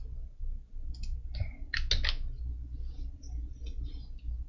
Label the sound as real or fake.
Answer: real